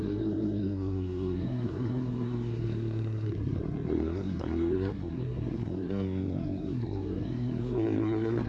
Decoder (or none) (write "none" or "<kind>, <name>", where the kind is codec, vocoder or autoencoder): codec, SNAC